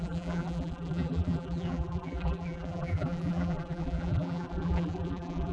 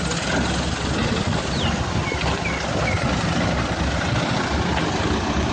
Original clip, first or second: second